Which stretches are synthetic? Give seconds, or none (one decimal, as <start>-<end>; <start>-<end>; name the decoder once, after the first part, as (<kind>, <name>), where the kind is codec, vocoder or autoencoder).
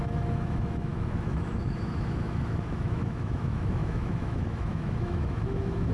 0.0-5.9 (autoencoder, DAC-VAE)